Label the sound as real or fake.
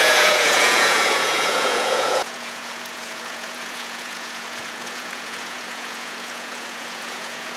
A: fake